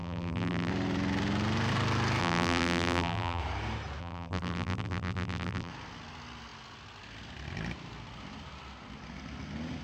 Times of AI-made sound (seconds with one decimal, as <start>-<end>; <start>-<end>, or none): 0.0-0.7; 2.2-3.4; 4.0-5.7